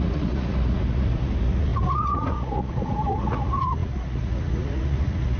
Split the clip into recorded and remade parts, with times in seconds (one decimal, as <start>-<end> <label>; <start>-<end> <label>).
0.0-5.4 remade